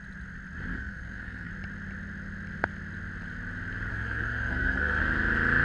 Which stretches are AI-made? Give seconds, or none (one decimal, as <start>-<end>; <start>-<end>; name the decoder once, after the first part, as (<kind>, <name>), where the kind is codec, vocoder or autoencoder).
0.7-1.5 (codec, SNAC); 3.9-5.0